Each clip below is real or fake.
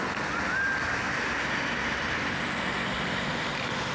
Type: real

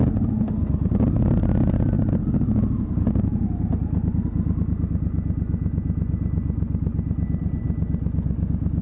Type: real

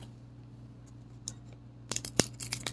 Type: real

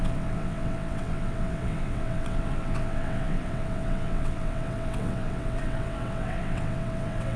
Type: fake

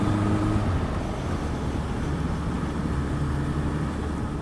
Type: real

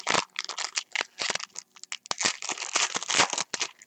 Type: real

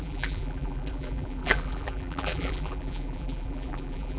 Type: fake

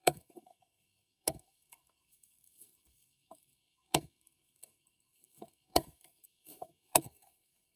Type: fake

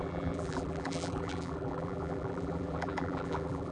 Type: fake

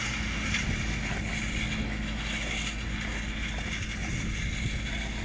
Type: real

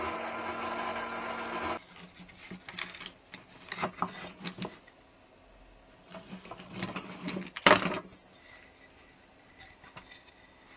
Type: real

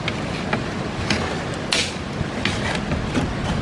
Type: real